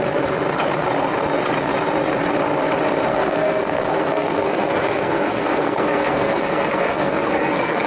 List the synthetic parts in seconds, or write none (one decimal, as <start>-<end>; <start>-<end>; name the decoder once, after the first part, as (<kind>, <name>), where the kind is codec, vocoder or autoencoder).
3.1-7.9 (codec, SNAC)